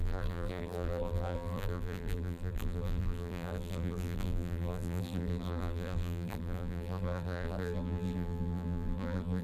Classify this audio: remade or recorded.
remade